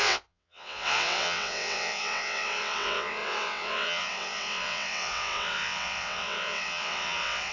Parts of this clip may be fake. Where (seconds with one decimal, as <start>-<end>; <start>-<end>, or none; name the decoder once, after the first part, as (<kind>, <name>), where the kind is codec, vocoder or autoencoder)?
0.0-7.5 (vocoder, WaveNeXt)